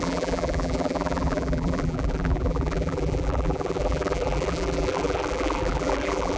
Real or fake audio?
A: fake